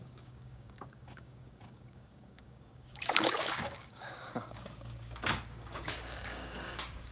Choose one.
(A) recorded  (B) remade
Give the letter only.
B